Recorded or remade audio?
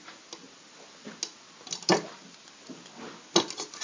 recorded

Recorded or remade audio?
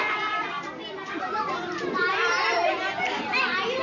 recorded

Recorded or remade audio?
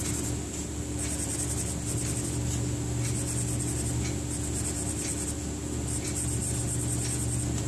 recorded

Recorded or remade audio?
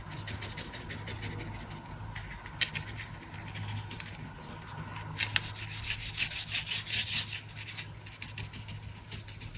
recorded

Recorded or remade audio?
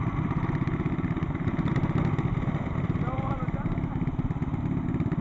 recorded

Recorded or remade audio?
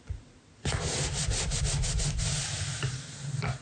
recorded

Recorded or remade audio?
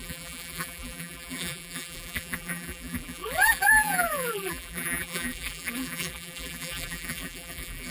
remade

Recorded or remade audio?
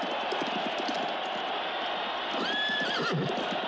recorded